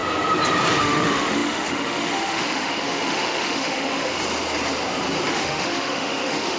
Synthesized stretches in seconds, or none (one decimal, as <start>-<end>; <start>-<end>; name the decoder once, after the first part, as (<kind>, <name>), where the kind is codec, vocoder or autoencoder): 0.8-4.1 (autoencoder, DAC-VAE); 5.3-6.6